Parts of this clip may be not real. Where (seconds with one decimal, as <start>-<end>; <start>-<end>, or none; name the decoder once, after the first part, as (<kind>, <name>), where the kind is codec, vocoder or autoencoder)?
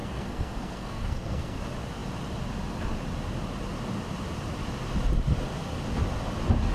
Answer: 0.0-1.6 (codec, SNAC)